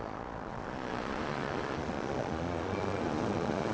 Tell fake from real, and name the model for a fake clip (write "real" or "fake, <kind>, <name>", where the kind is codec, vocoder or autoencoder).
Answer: fake, vocoder, Vocos